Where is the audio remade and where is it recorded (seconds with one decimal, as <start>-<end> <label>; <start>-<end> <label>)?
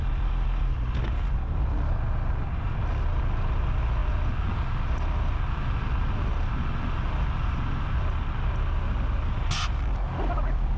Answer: 0.0-10.8 recorded